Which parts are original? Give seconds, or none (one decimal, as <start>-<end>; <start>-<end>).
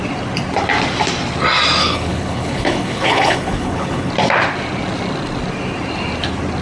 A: 0.0-1.8; 4.1-6.6